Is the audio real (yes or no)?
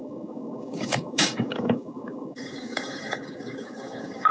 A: no